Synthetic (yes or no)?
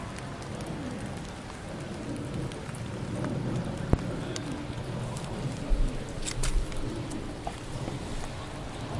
no